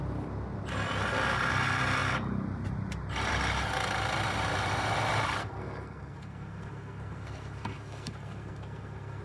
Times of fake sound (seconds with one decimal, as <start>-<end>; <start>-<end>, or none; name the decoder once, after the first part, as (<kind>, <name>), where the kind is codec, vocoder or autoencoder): 5.4-9.2 (codec, SNAC)